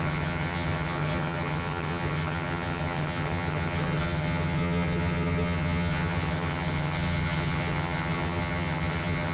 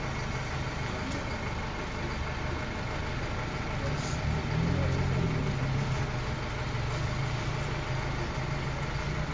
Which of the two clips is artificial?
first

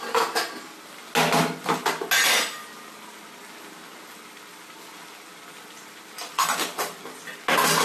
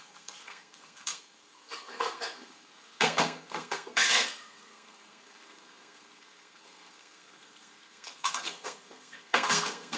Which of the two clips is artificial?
second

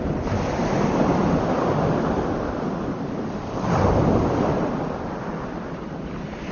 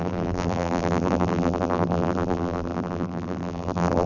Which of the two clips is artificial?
second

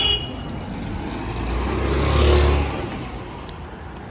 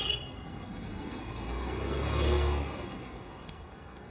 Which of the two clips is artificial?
second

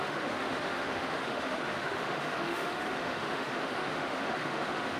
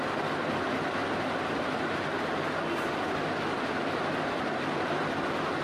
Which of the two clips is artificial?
first